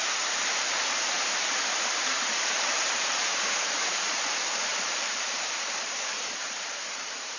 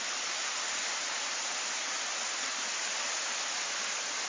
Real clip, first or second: second